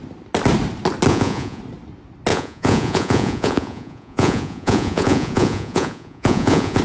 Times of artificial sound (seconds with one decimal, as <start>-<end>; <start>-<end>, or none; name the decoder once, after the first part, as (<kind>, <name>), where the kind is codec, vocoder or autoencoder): 1.1-1.6 (vocoder, Vocos); 2.3-6.8